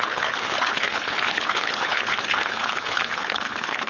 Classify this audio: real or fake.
fake